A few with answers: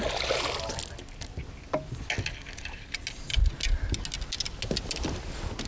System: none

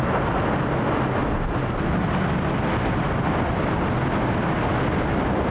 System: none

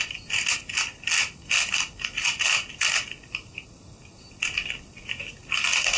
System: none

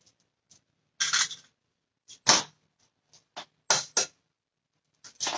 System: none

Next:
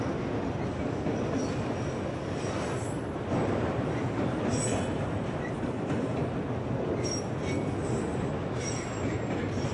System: none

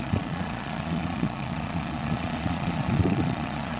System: vocoder, Vocos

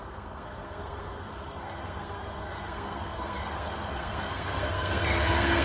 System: codec, SNAC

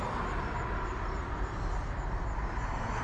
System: none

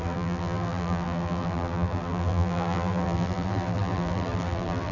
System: vocoder, BigVGAN v2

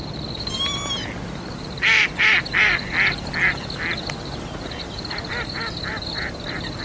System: none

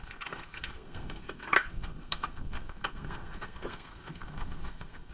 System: codec, SNAC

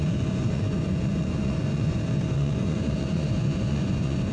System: vocoder, Vocos